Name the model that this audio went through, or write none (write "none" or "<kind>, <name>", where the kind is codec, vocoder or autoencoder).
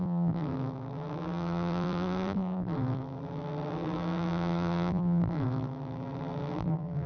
vocoder, BigVGAN v2